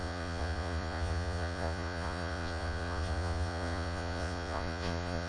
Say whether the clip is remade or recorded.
remade